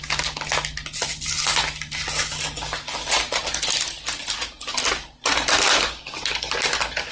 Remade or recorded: recorded